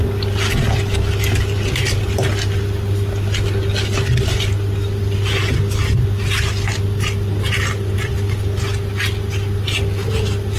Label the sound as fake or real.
real